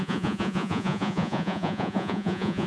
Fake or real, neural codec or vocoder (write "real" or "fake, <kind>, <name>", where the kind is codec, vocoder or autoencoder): fake, vocoder, Vocos